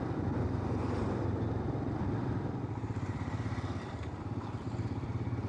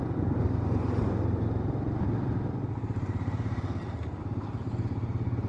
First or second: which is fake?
first